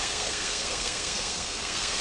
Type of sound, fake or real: fake